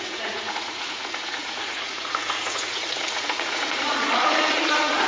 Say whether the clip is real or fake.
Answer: fake